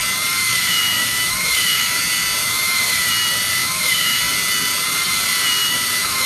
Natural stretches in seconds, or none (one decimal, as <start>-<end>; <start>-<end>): 0.0-0.4; 2.0-2.4; 3.1-3.6; 4.2-5.6